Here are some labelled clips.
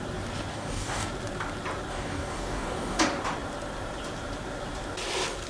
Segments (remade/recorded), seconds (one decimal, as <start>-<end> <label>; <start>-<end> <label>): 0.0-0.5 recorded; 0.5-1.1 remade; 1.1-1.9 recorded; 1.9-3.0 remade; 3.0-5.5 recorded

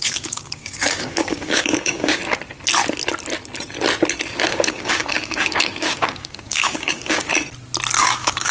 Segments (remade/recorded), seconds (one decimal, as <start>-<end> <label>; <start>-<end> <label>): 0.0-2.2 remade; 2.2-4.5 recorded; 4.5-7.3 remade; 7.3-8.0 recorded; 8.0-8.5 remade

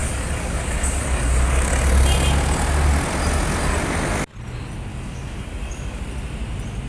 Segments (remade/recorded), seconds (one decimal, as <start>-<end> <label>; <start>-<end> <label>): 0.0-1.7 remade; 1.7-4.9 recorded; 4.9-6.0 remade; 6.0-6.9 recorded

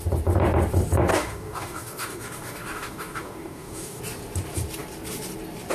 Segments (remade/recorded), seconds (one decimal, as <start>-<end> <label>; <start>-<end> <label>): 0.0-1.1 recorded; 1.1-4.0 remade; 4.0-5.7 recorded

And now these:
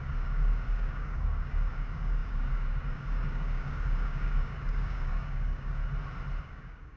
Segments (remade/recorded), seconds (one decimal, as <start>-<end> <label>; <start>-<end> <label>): 0.0-5.8 remade; 5.8-6.4 recorded; 6.4-7.0 remade

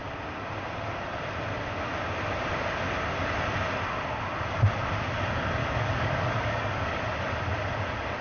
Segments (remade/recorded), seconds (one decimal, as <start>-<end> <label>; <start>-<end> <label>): 0.0-5.6 recorded; 5.6-7.0 remade; 7.0-8.2 recorded